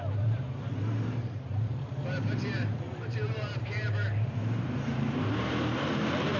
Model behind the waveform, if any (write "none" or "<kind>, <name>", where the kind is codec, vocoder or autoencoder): vocoder, BigVGAN v2